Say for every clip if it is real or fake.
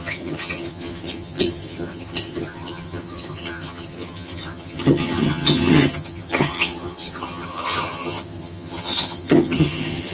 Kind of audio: fake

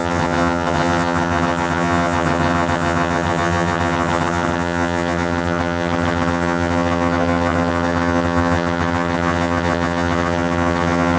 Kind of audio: fake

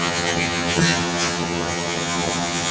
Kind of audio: fake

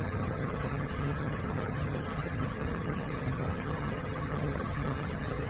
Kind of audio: fake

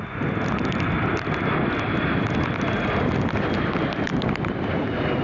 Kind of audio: real